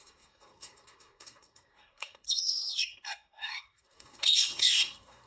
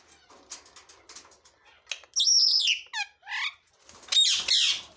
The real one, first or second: second